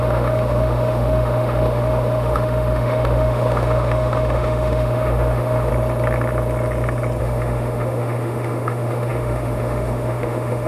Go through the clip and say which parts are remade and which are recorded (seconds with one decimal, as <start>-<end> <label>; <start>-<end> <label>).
0.0-5.7 remade; 5.7-7.2 recorded; 7.2-10.7 remade

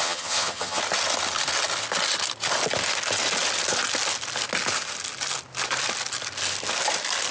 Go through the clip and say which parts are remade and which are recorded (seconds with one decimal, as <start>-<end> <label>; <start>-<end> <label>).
0.0-0.8 remade; 0.8-7.3 recorded

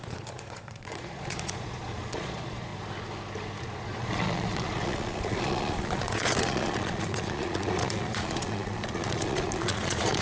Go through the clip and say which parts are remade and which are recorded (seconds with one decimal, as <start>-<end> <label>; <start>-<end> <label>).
0.0-2.7 remade; 2.7-3.6 recorded; 3.6-10.2 remade

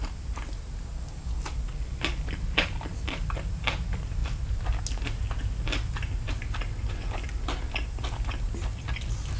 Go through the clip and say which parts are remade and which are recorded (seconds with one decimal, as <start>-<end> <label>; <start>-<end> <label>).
0.0-9.4 recorded

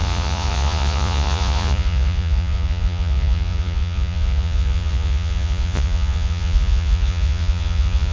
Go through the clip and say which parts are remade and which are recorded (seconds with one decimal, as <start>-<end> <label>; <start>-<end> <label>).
0.0-8.1 remade

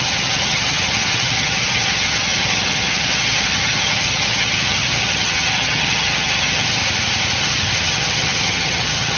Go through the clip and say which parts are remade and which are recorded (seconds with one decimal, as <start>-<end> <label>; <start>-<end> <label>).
0.0-6.8 remade; 6.8-7.4 recorded; 7.4-9.2 remade

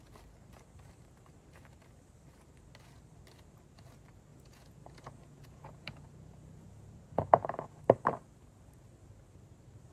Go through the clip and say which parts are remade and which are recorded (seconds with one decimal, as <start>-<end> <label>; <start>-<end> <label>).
0.0-4.3 recorded; 4.3-7.8 remade; 7.8-9.9 recorded